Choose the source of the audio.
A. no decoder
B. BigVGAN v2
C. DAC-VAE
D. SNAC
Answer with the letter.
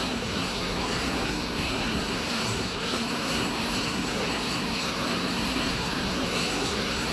D